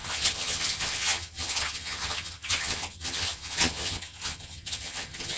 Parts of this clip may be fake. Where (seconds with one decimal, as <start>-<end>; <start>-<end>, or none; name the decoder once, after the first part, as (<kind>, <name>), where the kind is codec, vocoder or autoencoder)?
0.0-5.4 (vocoder, HiFi-GAN)

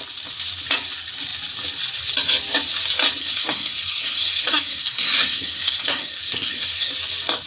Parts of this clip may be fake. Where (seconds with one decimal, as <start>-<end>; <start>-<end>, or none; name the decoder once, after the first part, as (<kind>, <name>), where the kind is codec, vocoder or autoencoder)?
3.2-6.9 (codec, SNAC)

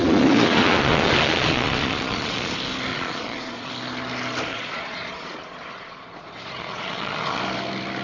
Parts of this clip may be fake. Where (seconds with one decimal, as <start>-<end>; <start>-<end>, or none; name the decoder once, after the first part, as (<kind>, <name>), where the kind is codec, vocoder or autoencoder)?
0.0-2.5 (vocoder, Vocos); 2.9-3.7; 4.5-7.4

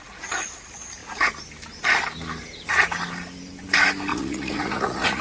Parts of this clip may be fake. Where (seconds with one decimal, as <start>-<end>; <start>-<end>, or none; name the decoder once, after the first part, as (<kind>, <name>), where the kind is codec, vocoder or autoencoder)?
4.1-5.2 (vocoder, Vocos)

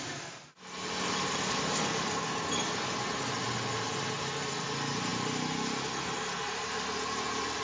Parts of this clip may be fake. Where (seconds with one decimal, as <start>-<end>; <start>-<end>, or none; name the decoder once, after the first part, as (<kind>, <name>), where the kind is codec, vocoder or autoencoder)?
none

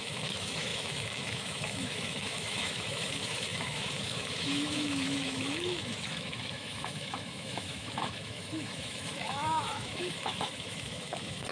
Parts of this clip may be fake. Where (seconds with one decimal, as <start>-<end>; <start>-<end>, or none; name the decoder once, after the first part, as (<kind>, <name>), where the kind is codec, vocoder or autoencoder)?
0.0-11.5 (autoencoder, DAC-VAE)

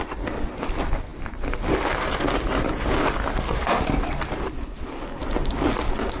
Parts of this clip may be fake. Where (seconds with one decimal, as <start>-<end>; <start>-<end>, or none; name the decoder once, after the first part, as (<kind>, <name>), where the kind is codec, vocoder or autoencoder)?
0.0-3.5 (vocoder, BigVGAN v2); 5.5-6.2